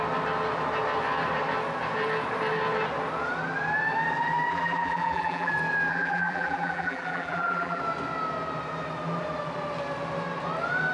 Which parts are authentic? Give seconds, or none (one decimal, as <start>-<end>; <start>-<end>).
0.0-4.5; 5.5-5.9; 7.8-10.9